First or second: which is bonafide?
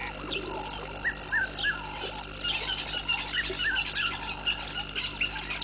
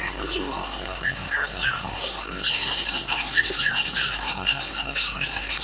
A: first